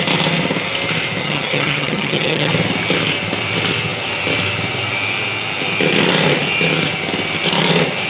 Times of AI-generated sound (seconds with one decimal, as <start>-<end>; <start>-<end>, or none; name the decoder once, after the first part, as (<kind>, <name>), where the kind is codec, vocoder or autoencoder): 1.2-2.5 (vocoder, HiFi-GAN)